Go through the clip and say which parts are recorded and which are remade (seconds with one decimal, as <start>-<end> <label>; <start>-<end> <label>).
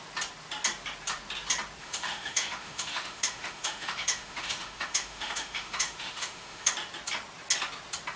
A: 0.0-1.8 recorded; 1.8-6.7 remade; 6.7-8.2 recorded